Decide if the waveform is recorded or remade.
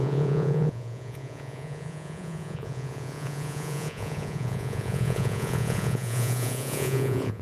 remade